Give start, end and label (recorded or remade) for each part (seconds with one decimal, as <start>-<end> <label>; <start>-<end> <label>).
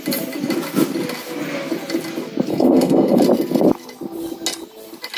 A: 0.0-2.5 recorded; 2.5-3.2 remade; 3.2-5.2 recorded